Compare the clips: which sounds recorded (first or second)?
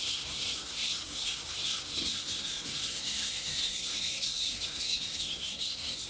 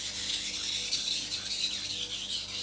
second